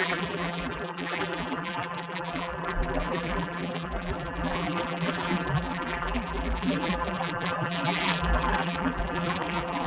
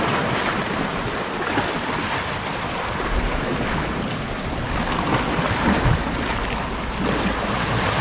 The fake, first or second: first